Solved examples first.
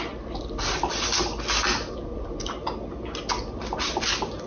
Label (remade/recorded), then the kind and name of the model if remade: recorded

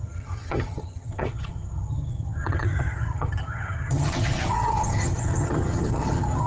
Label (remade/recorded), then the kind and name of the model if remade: remade, vocoder, HiFi-GAN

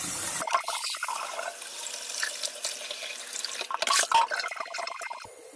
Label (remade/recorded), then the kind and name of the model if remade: recorded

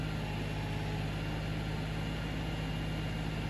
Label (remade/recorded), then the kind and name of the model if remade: recorded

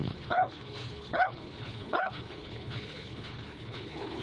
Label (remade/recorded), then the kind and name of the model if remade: remade, codec, HILCodec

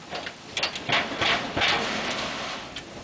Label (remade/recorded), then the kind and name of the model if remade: recorded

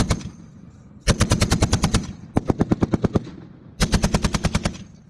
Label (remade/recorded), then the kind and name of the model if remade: recorded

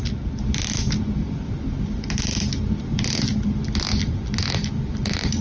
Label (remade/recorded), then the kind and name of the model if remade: recorded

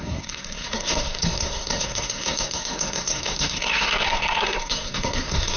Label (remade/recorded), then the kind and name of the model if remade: remade, codec, SNAC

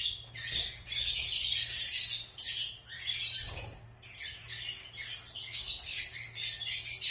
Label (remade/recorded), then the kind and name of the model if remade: recorded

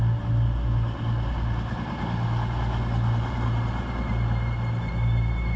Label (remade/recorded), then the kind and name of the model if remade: recorded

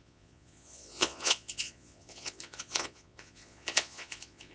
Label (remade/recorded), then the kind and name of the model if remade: remade, vocoder, Vocos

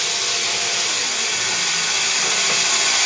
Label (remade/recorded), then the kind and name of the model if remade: recorded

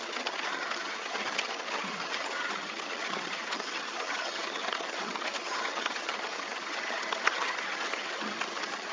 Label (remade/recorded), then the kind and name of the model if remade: remade, vocoder, HiFi-GAN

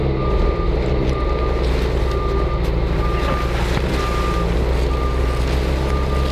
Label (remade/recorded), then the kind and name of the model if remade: recorded